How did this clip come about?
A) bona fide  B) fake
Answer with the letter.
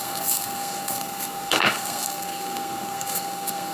B